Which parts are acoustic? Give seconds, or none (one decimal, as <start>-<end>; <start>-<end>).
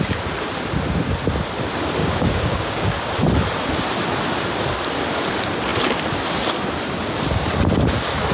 0.0-2.0; 3.1-8.3